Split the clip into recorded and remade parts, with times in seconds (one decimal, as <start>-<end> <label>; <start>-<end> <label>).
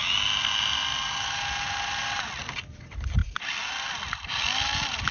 0.0-5.1 recorded